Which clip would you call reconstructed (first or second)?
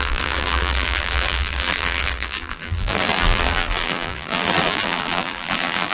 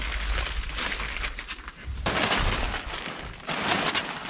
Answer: first